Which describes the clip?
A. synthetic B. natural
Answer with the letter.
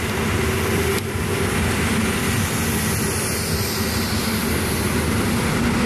B